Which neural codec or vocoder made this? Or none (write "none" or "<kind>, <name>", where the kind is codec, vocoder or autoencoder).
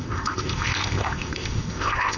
codec, ZipCodec